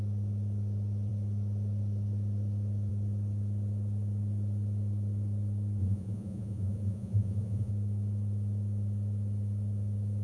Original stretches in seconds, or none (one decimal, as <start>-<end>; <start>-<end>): 0.0-5.8; 7.7-10.2